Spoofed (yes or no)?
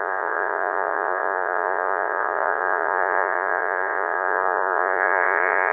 yes